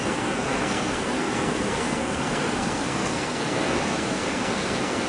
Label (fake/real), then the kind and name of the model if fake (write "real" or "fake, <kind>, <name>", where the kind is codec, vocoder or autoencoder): fake, codec, SNAC